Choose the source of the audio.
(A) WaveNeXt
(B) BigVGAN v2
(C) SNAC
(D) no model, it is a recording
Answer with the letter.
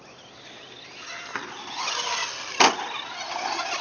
D